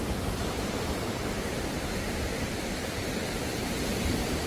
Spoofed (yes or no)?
yes